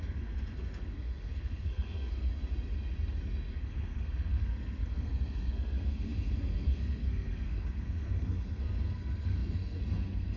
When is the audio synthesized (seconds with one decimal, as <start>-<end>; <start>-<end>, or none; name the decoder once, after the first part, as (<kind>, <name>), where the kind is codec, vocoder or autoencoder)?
0.0-2.3 (codec, SNAC); 3.5-10.4